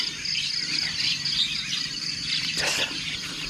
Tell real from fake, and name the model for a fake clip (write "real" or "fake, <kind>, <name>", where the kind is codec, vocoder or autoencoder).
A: real